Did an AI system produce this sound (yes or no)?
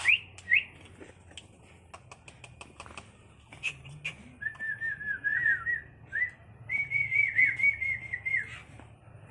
no